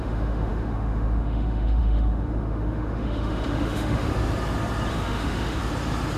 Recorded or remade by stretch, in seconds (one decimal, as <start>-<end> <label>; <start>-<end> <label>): 0.0-4.1 remade; 4.1-4.9 recorded; 4.9-5.6 remade; 5.6-6.2 recorded